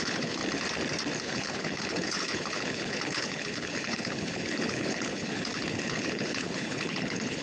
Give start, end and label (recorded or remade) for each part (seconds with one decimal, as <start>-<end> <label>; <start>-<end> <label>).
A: 0.0-0.4 remade; 0.4-1.2 recorded; 1.2-7.4 remade